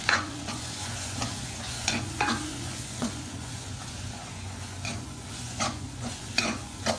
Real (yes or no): no